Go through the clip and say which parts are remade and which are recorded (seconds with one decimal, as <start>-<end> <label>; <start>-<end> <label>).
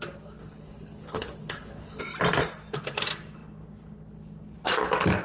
0.0-0.4 recorded; 0.4-2.0 remade; 2.0-5.2 recorded